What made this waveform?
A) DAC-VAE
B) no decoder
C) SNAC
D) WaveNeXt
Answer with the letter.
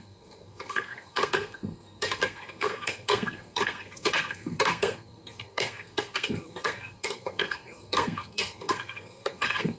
C